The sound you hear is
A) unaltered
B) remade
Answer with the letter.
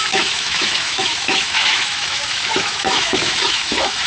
B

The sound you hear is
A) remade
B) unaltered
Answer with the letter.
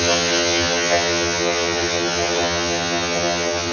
A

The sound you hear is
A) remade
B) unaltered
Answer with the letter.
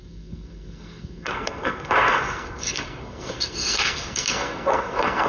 A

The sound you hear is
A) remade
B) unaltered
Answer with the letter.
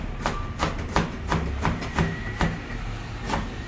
B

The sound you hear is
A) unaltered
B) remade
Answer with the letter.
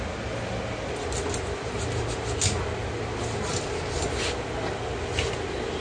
A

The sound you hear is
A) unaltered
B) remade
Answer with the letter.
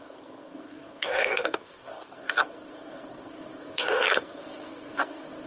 B